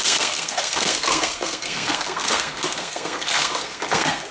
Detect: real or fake fake